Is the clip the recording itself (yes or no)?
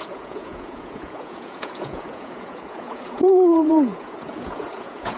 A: no